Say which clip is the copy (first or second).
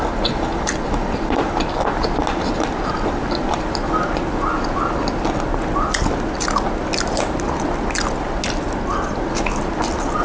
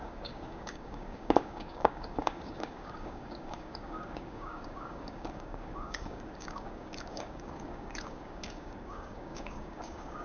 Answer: second